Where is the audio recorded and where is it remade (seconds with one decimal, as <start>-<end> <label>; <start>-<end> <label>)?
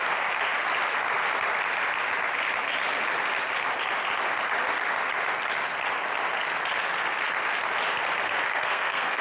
0.0-8.5 recorded; 8.5-9.2 remade